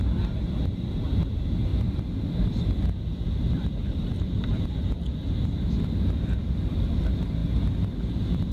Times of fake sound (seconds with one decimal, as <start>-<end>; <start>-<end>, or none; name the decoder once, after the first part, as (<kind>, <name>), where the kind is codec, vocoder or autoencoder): 0.0-7.4 (vocoder, BigVGAN v2); 8.1-8.5